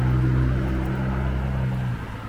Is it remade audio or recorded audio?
recorded